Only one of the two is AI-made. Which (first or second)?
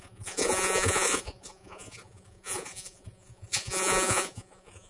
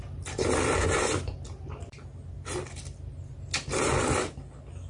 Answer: first